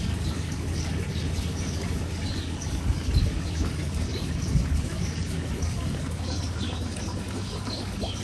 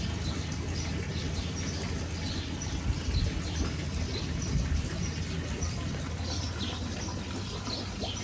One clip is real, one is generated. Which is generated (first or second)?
first